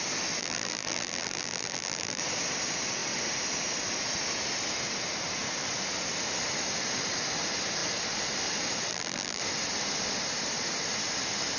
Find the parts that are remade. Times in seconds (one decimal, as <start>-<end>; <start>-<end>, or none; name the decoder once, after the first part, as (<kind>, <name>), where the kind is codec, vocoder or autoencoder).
0.4-2.2 (vocoder, BigVGAN v2); 8.9-9.4